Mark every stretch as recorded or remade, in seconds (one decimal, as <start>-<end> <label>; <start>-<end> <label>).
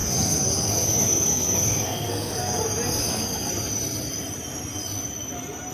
0.0-2.6 remade; 2.6-3.0 recorded; 3.0-3.5 remade; 3.5-5.7 recorded